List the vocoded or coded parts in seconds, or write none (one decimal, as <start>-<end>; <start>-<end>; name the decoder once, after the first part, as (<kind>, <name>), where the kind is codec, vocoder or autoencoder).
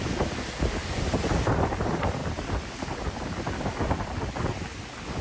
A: none